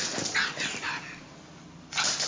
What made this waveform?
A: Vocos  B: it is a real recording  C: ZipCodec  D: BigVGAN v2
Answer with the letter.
B